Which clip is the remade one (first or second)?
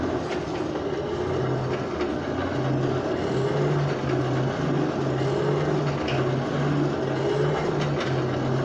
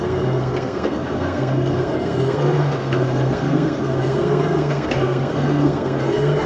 second